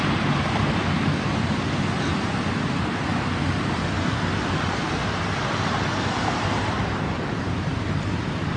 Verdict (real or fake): fake